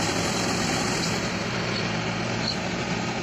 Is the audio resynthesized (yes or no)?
yes